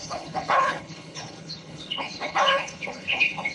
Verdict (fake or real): fake